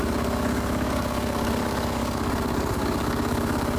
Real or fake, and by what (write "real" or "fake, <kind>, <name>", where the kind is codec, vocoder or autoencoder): fake, codec, DAC